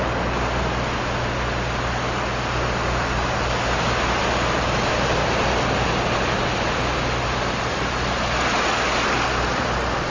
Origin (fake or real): real